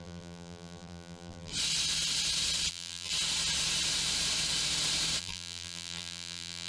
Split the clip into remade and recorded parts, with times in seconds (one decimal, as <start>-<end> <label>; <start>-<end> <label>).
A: 0.0-1.5 remade; 1.5-2.7 recorded; 2.7-3.1 remade; 3.1-5.2 recorded; 5.2-6.7 remade

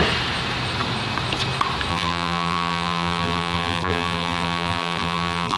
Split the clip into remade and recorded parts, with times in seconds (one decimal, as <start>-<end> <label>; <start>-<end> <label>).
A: 0.0-1.9 recorded; 1.9-5.6 remade

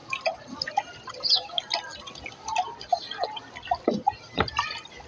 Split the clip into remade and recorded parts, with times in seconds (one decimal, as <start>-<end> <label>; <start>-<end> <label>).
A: 0.0-1.1 remade; 1.1-5.1 recorded

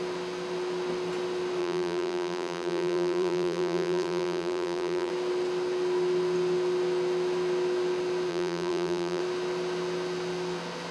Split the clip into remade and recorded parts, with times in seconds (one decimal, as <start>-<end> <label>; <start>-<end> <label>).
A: 0.0-1.6 recorded; 1.6-5.1 remade; 5.1-8.3 recorded; 8.3-9.2 remade; 9.2-10.9 recorded